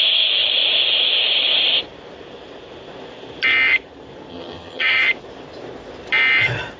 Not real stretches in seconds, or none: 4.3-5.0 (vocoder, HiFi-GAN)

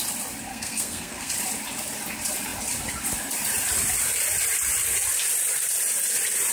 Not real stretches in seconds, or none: 0.5-1.3 (codec, SNAC)

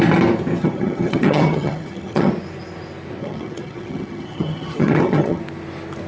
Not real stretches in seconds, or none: 0.6-2.3 (vocoder, HiFi-GAN); 3.2-5.4

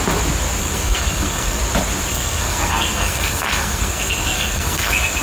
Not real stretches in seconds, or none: 0.6-1.6 (codec, SNAC); 2.1-5.2

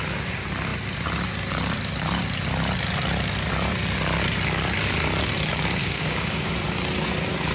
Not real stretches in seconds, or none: 5.8-6.5 (codec, DAC)

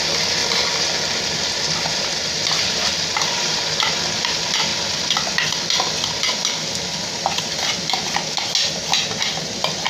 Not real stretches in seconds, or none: none

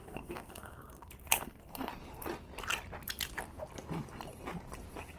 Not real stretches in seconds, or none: 0.0-1.9 (codec, SNAC)

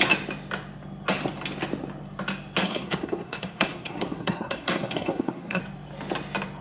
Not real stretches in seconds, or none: 2.6-5.6 (codec, SNAC)